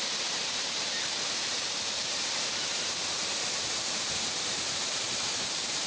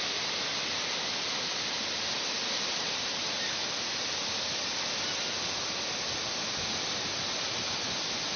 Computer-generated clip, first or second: first